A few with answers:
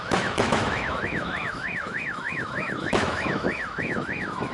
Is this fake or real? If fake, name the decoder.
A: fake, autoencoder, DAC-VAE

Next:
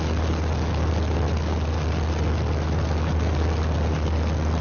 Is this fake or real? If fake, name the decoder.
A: real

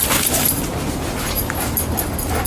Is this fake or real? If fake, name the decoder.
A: real